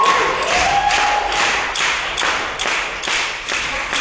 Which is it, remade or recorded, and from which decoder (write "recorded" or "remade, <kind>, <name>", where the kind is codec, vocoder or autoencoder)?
recorded